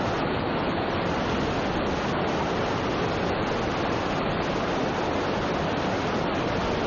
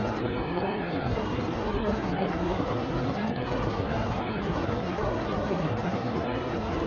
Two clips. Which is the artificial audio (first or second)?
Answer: second